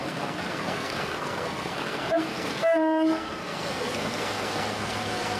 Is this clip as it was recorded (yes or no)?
no